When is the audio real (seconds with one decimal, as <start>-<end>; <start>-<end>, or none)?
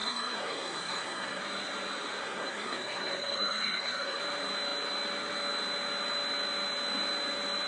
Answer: 1.4-2.2; 4.2-7.7